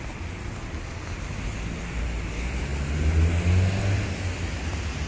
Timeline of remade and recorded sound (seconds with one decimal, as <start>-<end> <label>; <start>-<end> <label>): 0.0-5.1 recorded

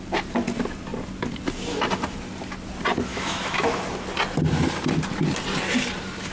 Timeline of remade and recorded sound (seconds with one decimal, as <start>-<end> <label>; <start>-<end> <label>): 0.0-3.1 recorded; 3.1-3.8 remade; 3.8-6.3 recorded

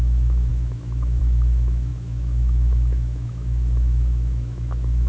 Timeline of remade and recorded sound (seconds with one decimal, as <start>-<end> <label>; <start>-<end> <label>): 0.0-5.1 remade

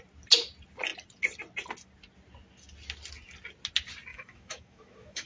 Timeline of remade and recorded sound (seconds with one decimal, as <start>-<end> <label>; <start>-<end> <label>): 0.0-4.1 recorded; 4.1-5.3 remade